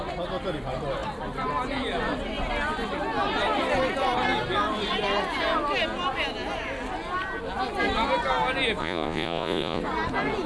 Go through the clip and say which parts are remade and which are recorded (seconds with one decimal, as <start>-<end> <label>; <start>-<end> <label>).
0.0-8.8 recorded; 8.8-9.8 remade; 9.8-10.5 recorded